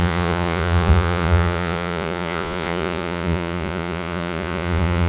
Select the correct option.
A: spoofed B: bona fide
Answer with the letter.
A